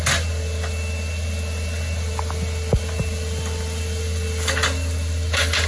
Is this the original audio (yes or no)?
yes